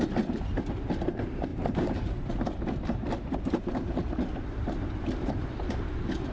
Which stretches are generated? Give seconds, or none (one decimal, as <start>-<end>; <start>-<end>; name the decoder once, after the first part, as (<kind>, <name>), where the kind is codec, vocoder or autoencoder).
1.5-2.3 (vocoder, BigVGAN v2); 3.0-3.7